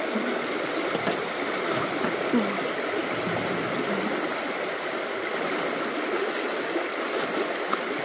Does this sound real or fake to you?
real